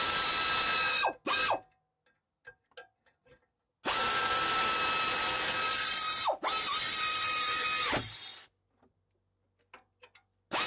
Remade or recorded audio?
recorded